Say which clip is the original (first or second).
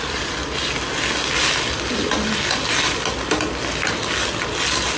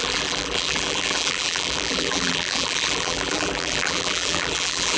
first